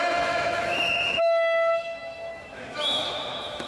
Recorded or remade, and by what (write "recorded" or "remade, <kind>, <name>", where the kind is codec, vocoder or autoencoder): remade, autoencoder, DAC-VAE